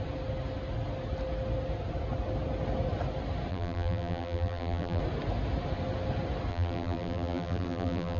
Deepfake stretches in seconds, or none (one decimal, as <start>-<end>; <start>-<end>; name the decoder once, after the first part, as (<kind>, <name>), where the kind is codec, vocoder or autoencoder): 3.5-5.0 (vocoder, BigVGAN v2); 6.5-8.2